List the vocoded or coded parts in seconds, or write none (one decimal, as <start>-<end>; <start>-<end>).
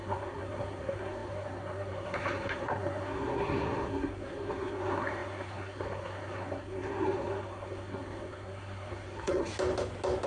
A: 0.0-9.5